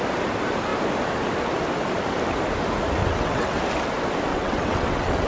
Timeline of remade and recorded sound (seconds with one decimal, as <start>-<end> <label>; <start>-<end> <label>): 0.0-3.0 recorded; 3.0-3.6 remade; 3.6-4.3 recorded; 4.3-5.3 remade